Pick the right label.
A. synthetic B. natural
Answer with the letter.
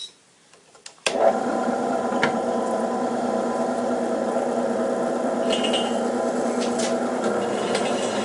A